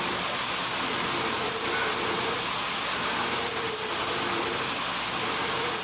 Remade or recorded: recorded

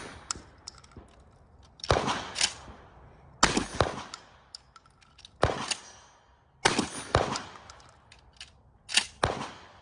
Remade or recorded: recorded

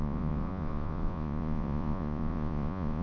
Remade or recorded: remade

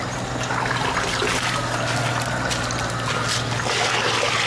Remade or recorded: recorded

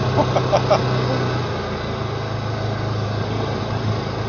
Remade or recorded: recorded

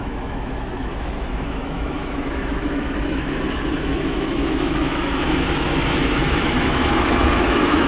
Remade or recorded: remade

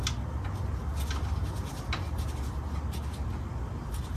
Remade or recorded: recorded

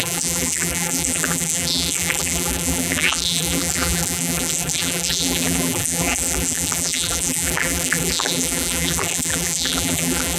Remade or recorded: remade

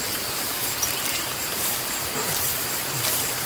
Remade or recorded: remade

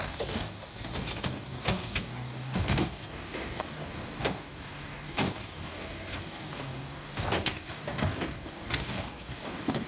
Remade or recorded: remade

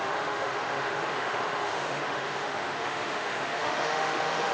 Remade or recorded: remade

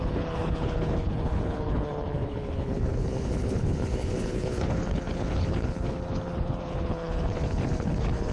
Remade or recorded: remade